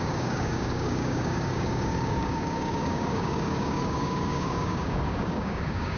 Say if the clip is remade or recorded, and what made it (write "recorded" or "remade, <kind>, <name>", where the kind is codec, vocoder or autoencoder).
remade, codec, DAC